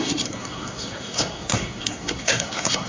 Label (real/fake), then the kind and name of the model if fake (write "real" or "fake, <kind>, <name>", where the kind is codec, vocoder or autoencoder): fake, codec, SNAC